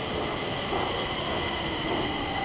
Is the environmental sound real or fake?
real